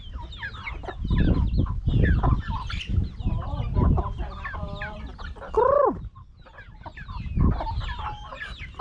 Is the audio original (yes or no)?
yes